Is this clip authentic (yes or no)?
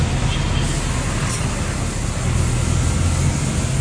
yes